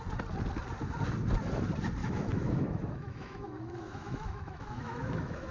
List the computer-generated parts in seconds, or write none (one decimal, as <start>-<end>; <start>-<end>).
2.0-5.5